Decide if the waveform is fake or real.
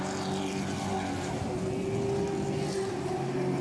real